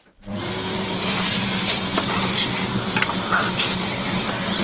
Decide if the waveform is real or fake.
real